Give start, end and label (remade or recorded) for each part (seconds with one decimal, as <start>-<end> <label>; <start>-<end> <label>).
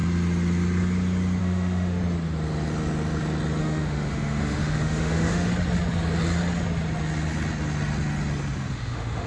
0.0-1.4 recorded; 1.4-2.0 remade; 2.0-3.6 recorded; 3.6-5.5 remade; 5.5-8.7 recorded; 8.7-9.3 remade